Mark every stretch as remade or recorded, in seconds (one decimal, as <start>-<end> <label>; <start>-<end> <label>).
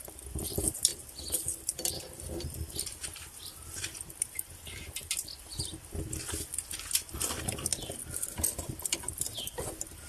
0.0-7.7 remade; 7.7-8.5 recorded; 8.5-10.1 remade